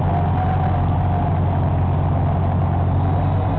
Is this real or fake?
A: real